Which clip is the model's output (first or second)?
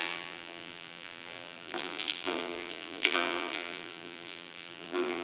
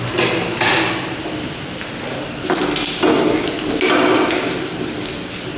first